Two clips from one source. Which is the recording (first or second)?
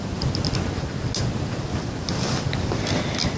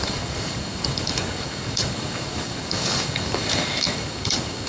first